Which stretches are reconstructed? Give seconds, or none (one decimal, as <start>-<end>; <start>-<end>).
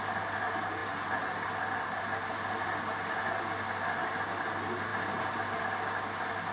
none